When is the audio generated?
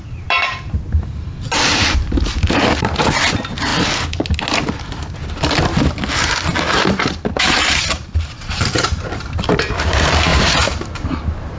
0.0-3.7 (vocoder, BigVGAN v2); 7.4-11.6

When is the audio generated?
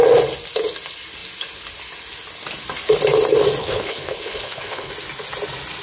3.6-4.9 (codec, HILCodec)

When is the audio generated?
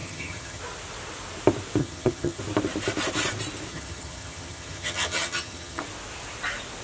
0.0-0.6 (vocoder, HiFi-GAN); 1.8-2.4; 3.7-5.8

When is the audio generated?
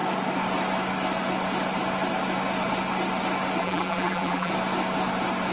3.6-4.5 (vocoder, BigVGAN v2)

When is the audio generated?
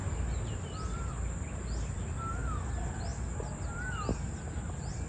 none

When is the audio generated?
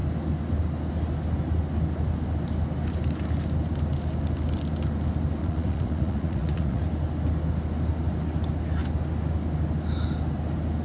5.4-6.8 (vocoder, Vocos)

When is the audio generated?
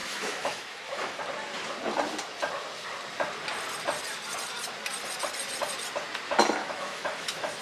0.0-1.2 (autoencoder, DAC-VAE); 6.6-7.6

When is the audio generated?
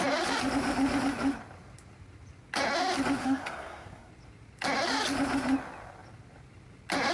3.2-4.1 (codec, SNAC)